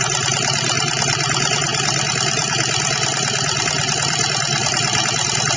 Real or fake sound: fake